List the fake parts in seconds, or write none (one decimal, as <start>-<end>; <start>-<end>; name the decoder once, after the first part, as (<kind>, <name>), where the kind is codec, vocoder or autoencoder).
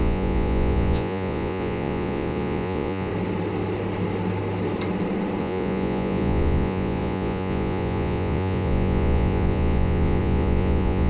0.0-3.1 (vocoder, Vocos); 5.4-11.1